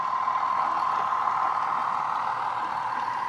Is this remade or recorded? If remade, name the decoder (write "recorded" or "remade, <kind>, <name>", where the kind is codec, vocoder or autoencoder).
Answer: recorded